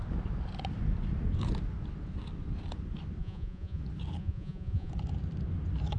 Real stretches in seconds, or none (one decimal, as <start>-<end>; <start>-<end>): 0.0-3.2; 3.8-4.2; 4.9-6.0